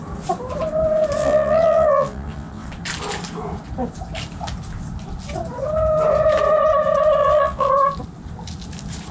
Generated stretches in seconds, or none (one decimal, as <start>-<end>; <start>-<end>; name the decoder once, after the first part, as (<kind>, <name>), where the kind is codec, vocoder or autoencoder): 1.2-2.7 (vocoder, WaveNeXt); 7.2-7.7